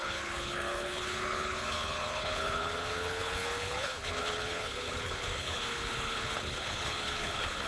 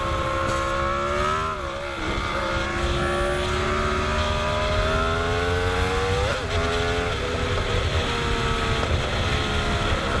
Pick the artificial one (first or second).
first